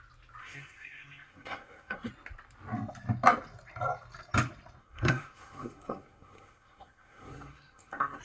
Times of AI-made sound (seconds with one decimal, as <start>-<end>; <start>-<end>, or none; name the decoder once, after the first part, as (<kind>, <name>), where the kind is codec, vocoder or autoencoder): 0.4-2.1 (codec, SNAC); 4.8-8.2